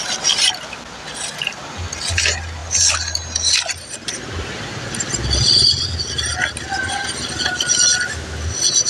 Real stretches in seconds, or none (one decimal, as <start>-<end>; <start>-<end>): 0.0-8.9